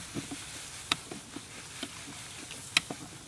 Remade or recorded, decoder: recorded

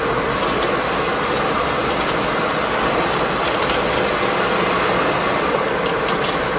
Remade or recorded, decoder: recorded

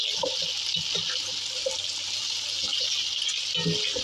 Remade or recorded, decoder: recorded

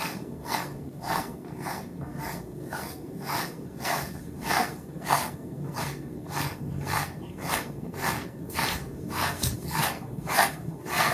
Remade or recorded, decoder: remade, codec, SNAC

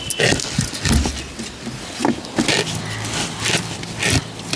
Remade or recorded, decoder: recorded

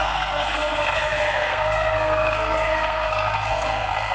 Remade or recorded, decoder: remade, codec, SNAC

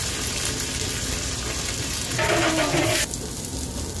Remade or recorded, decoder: recorded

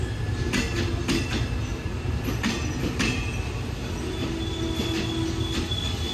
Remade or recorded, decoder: recorded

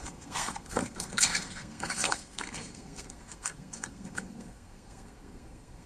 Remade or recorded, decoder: remade, codec, SNAC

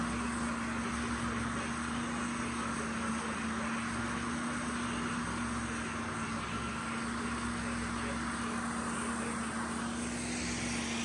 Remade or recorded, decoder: recorded